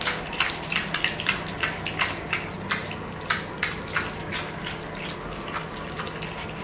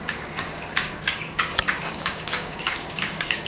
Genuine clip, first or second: first